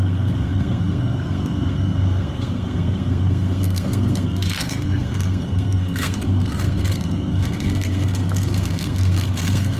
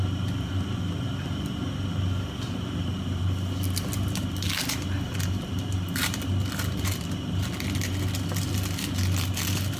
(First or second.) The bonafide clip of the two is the second